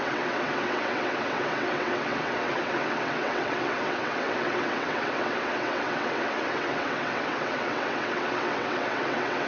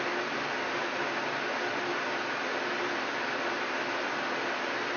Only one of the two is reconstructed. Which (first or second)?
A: first